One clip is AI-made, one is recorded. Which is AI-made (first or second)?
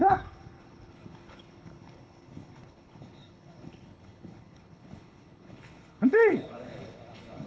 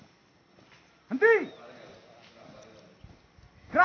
first